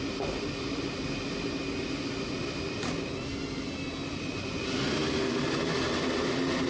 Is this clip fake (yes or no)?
no